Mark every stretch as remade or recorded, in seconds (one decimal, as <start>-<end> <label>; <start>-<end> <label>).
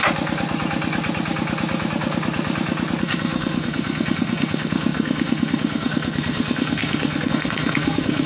0.0-3.0 recorded; 3.0-8.3 remade